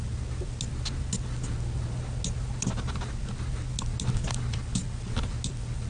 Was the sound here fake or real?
real